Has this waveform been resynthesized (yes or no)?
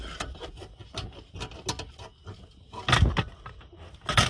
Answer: no